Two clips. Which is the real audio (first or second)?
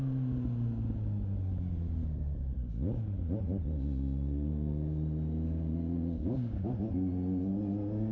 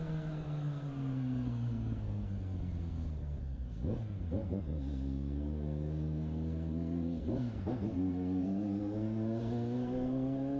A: first